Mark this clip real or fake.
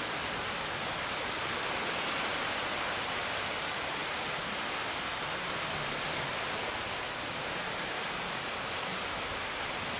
real